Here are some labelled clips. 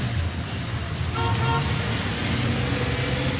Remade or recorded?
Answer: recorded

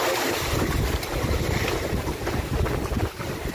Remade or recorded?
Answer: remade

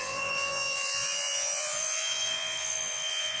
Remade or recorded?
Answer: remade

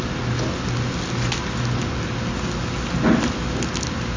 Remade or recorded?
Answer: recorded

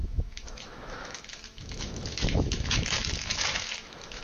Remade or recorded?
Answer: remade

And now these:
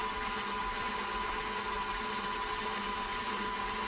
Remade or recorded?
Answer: recorded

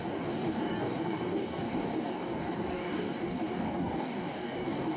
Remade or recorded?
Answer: remade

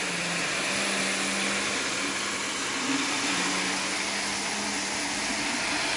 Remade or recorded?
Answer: recorded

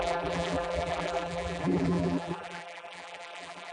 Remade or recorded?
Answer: remade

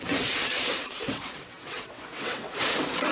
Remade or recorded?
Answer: remade